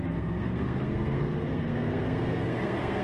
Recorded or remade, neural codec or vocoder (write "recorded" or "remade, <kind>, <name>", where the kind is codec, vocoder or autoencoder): remade, codec, SNAC